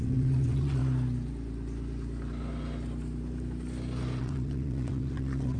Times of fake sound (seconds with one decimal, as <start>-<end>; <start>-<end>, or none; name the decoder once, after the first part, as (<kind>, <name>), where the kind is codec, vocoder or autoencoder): 0.0-0.8 (vocoder, WaveNeXt); 4.2-5.6